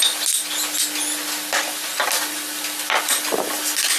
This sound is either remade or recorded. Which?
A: recorded